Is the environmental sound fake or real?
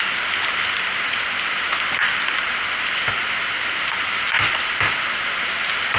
real